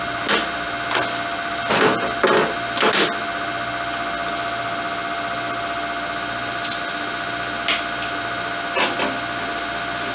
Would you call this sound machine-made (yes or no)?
no